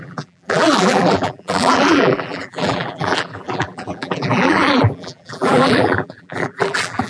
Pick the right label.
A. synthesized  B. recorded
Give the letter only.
A